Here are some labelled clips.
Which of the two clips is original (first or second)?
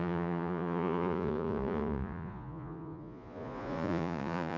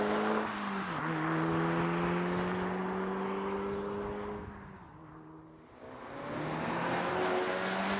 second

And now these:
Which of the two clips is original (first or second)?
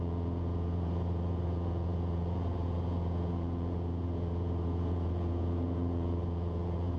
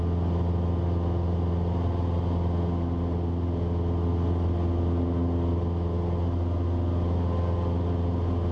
second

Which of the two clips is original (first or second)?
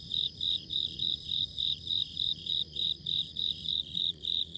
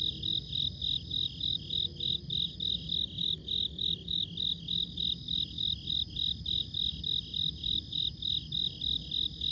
second